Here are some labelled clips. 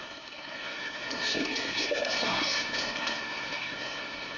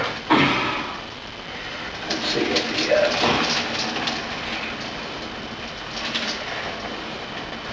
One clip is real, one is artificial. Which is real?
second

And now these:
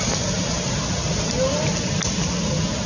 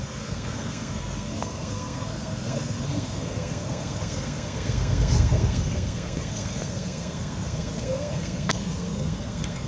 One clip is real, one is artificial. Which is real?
first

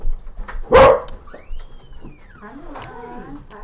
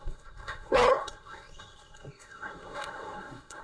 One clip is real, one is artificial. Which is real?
first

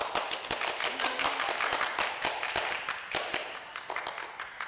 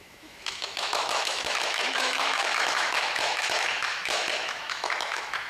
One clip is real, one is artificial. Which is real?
first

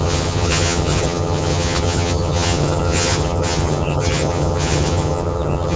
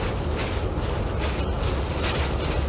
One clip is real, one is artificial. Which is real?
second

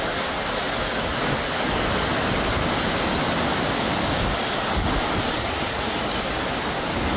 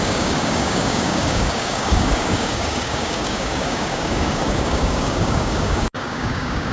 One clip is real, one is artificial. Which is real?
first